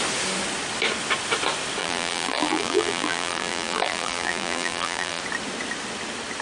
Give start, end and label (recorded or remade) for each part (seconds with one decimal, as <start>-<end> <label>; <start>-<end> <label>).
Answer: 0.0-1.8 recorded; 1.8-5.2 remade; 5.2-6.4 recorded